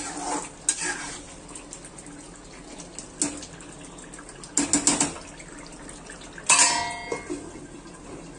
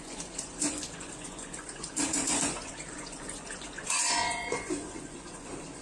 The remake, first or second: second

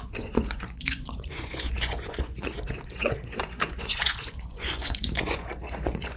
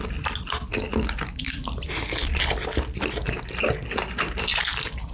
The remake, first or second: first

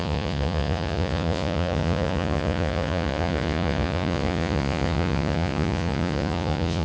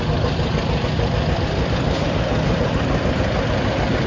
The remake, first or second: first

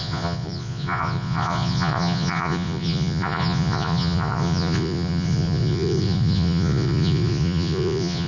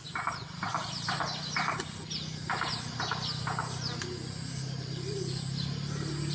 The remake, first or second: first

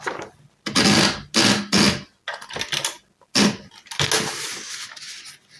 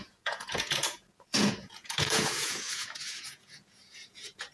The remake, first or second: second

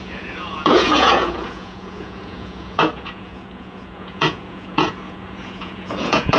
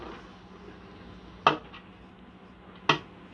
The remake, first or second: first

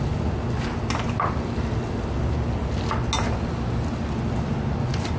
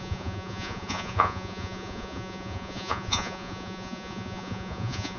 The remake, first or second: second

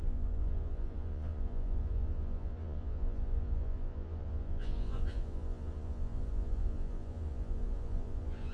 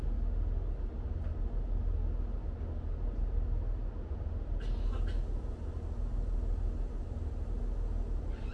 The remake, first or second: first